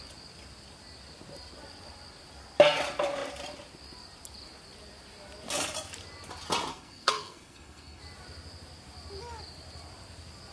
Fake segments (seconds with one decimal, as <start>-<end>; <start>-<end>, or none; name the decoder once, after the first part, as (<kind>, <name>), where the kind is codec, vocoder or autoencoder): 6.7-8.0 (codec, SNAC)